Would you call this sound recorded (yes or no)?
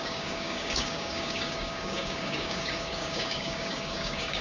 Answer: no